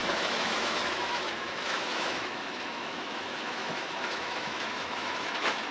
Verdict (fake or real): fake